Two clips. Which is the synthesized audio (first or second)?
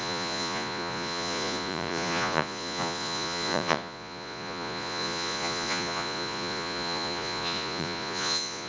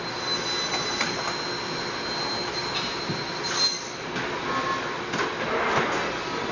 first